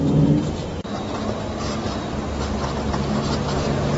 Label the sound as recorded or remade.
recorded